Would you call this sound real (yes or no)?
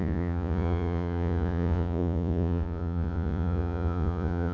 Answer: no